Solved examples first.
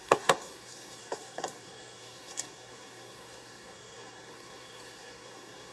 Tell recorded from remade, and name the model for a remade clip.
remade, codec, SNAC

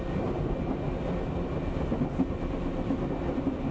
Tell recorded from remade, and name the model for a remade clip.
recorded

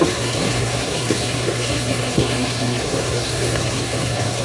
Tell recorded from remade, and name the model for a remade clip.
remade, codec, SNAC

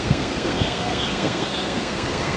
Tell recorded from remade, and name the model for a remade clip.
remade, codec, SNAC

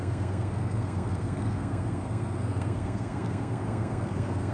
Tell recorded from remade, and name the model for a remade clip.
remade, codec, SNAC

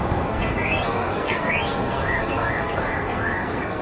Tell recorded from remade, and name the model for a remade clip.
remade, codec, SNAC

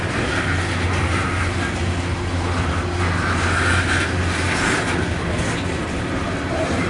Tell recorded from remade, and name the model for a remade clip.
recorded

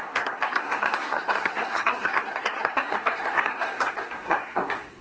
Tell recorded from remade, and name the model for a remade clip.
remade, codec, SNAC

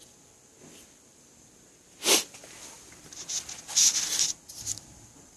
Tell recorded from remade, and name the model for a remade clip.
recorded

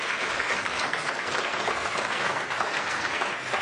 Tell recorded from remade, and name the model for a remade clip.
remade, codec, SNAC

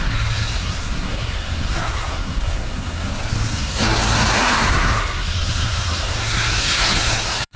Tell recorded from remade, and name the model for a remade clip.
remade, codec, SNAC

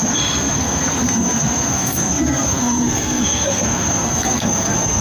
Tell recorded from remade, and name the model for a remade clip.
remade, codec, SNAC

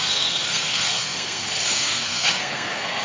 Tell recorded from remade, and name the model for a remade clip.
remade, codec, SNAC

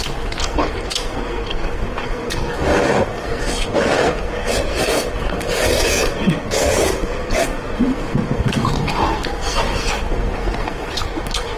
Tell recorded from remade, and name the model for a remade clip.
remade, codec, SNAC